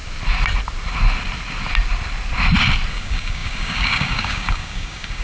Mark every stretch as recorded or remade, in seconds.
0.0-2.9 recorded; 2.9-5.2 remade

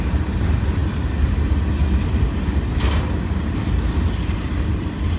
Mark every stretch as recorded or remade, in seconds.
0.0-5.2 recorded

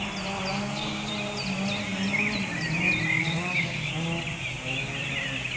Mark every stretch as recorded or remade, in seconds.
0.0-0.5 recorded; 0.5-1.1 remade; 1.1-3.2 recorded; 3.2-3.9 remade; 3.9-5.6 recorded